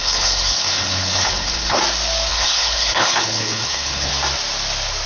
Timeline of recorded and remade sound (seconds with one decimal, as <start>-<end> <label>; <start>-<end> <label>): 0.0-1.8 remade; 1.8-2.3 recorded; 2.3-4.1 remade; 4.1-5.1 recorded